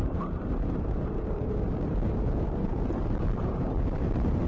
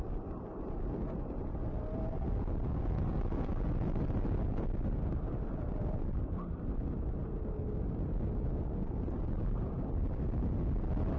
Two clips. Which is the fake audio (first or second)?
first